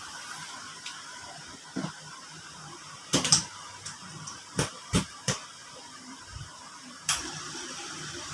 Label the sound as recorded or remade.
remade